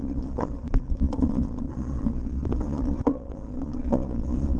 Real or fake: fake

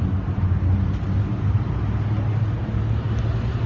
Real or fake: real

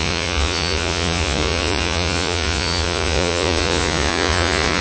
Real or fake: fake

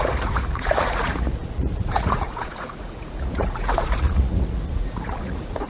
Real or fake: fake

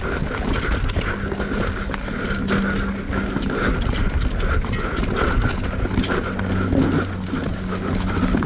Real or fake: real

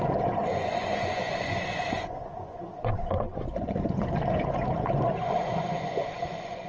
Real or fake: fake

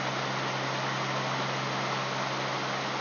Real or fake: real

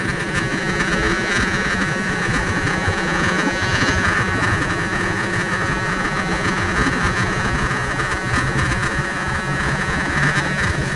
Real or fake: fake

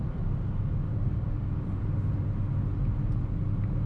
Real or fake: real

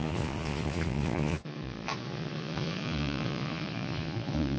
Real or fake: fake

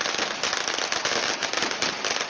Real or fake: real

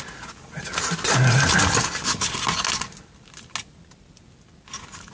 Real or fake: real